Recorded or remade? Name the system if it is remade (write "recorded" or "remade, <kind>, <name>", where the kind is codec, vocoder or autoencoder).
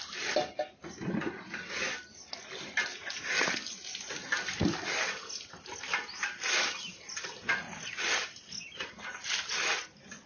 recorded